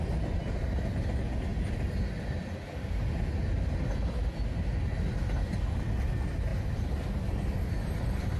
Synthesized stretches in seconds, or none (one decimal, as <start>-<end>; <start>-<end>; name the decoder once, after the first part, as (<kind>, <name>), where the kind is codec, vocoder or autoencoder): none